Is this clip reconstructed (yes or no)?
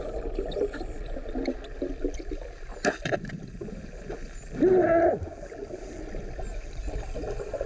no